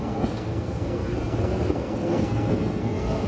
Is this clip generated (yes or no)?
yes